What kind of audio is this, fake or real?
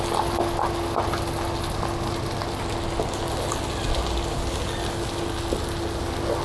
real